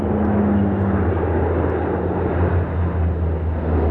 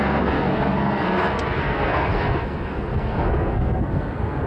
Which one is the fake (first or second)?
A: second